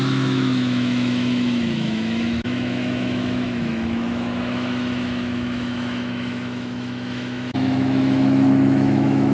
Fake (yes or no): yes